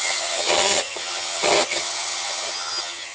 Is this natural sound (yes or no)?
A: no